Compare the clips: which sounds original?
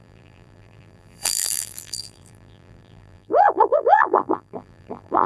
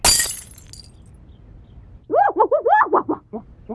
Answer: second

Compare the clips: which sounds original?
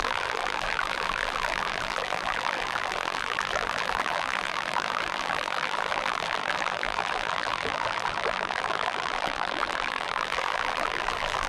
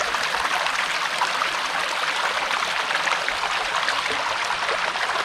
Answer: second